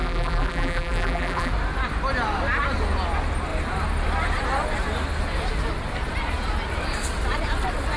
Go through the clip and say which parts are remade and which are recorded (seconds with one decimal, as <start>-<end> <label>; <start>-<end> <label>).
0.0-1.5 remade; 1.5-8.0 recorded